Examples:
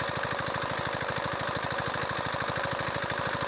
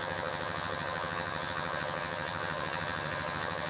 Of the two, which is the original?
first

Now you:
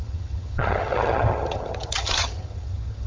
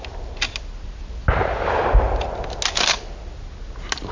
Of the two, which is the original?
second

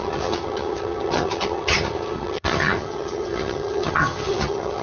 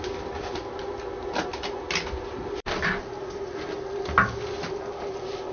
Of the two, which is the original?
second